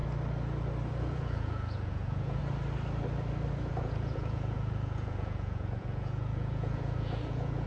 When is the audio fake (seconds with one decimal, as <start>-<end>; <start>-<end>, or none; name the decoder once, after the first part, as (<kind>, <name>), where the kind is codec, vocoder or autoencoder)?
0.9-2.4 (vocoder, Vocos); 3.5-7.7